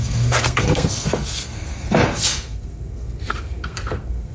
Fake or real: fake